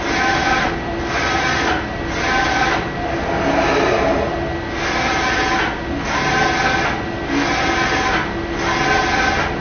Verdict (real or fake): real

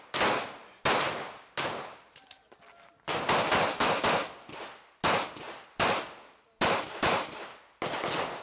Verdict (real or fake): real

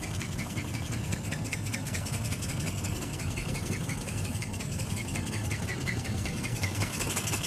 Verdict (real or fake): fake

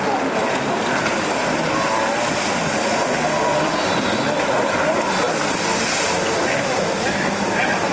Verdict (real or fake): fake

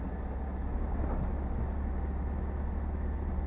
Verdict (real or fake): real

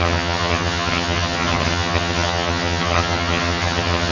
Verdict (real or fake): fake